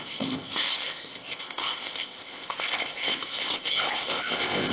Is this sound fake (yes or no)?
yes